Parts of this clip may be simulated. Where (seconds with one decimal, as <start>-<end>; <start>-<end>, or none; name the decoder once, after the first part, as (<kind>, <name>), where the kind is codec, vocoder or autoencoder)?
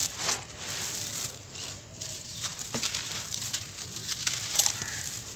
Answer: 2.1-5.4 (vocoder, BigVGAN v2)